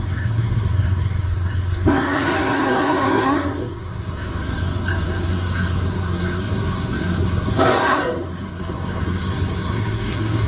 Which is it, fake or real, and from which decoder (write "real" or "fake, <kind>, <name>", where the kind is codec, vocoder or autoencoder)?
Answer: fake, codec, SNAC